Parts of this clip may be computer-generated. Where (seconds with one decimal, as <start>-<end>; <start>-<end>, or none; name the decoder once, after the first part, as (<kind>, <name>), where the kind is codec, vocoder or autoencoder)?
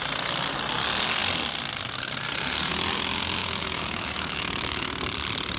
3.4-4.9 (autoencoder, DAC-VAE)